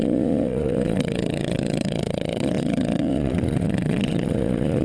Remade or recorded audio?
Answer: remade